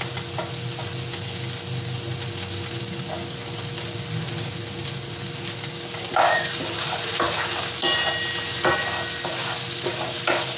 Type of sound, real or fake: real